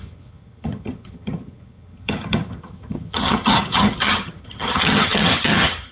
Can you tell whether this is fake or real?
fake